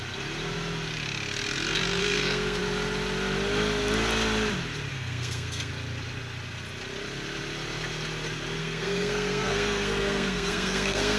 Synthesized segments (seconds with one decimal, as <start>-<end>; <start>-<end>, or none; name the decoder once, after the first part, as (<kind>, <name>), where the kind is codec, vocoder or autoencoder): 2.0-2.6 (codec, SNAC); 4.9-5.7; 8.6-11.2